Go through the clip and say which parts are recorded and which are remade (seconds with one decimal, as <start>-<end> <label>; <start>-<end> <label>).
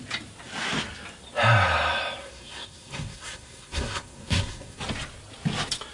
0.0-2.2 recorded; 2.2-4.8 remade; 4.8-5.9 recorded